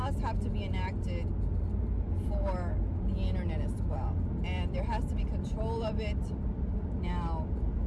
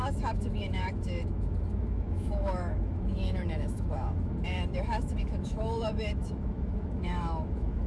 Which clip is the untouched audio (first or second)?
first